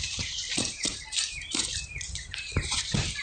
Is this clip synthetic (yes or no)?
yes